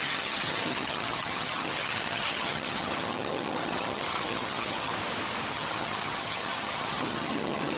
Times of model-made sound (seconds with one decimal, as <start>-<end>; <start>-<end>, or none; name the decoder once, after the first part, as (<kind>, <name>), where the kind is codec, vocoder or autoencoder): 0.0-4.9 (vocoder, HiFi-GAN); 5.5-7.8

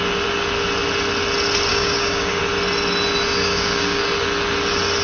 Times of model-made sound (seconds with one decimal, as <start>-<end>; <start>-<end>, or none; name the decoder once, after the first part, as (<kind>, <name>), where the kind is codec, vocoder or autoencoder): 1.7-2.4 (codec, DAC); 3.4-4.0

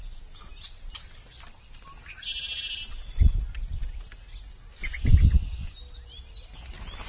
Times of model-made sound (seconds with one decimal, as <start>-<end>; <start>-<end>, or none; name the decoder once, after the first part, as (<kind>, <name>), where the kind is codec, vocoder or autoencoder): none

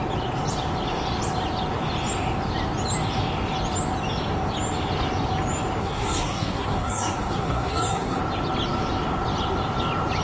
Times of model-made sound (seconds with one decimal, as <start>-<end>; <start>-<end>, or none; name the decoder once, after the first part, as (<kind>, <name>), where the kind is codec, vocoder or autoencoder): 5.8-8.2 (codec, SNAC)

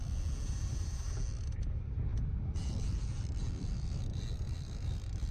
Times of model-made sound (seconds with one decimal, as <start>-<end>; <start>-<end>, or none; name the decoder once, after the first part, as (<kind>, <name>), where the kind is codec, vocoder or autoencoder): 2.1-4.1 (vocoder, BigVGAN v2)

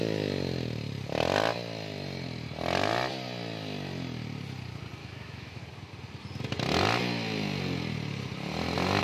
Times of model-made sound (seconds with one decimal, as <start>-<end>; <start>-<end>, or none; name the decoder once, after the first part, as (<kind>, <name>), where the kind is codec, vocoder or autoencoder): 5.0-5.6 (autoencoder, DAC-VAE)

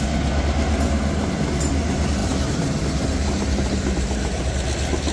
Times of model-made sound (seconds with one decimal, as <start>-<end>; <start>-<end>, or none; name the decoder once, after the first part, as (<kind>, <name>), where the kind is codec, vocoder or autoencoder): 2.2-4.5 (vocoder, BigVGAN v2)